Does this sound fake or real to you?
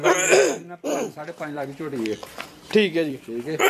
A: fake